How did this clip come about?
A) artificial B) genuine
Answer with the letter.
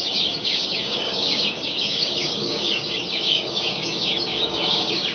A